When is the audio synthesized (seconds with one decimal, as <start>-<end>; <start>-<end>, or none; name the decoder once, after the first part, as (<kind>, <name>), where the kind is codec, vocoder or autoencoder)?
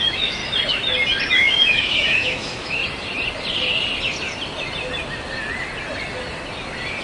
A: 0.0-0.4 (autoencoder, DAC-VAE); 1.3-2.8